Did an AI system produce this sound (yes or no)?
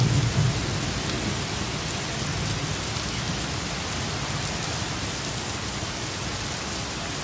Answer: no